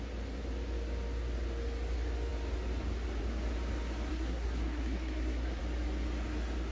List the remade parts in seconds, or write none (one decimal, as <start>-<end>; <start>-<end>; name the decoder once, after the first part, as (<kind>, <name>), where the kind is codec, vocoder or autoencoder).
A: 4.1-5.6 (codec, SNAC)